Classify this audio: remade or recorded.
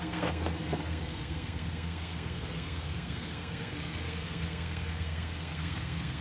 remade